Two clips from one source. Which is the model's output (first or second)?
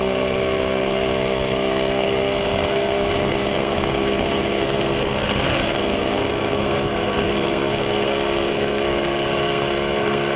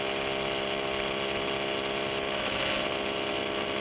first